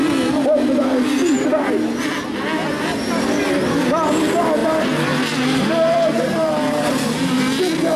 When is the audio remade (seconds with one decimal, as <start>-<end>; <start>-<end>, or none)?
4.6-7.4